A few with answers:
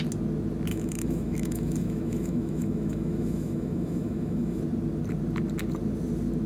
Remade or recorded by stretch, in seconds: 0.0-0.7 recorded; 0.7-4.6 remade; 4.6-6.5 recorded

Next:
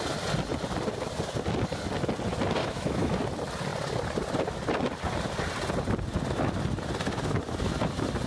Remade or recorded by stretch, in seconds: 0.0-2.6 recorded; 2.6-3.2 remade; 3.2-8.3 recorded